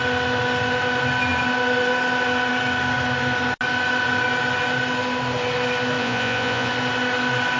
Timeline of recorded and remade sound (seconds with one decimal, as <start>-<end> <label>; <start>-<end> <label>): 0.0-6.0 recorded; 6.0-6.7 remade; 6.7-7.6 recorded